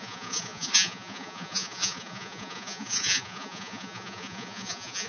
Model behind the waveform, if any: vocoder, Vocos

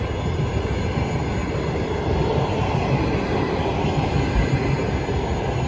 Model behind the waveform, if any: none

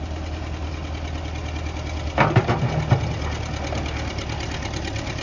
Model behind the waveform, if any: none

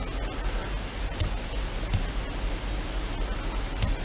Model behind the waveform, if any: none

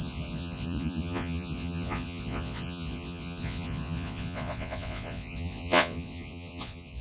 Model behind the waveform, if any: vocoder, Vocos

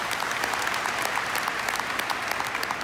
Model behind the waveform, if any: none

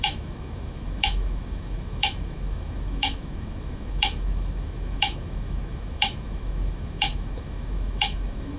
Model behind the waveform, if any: autoencoder, DAC-VAE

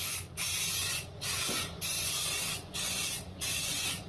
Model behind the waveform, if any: vocoder, Vocos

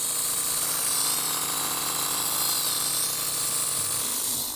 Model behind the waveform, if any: none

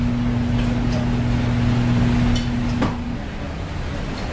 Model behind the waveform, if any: none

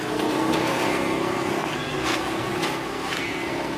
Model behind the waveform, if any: codec, SNAC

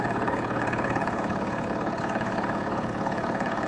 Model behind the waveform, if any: codec, HILCodec